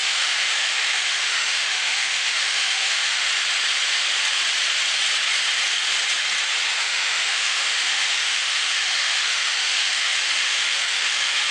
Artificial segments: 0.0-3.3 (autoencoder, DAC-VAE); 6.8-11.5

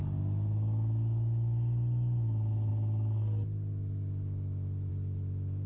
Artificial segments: none

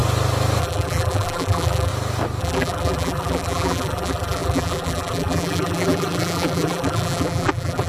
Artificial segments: 0.6-1.9 (vocoder, BigVGAN v2); 2.4-7.9

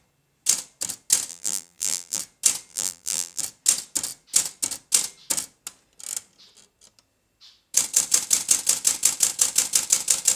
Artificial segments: 1.3-2.2 (vocoder, BigVGAN v2); 2.7-3.4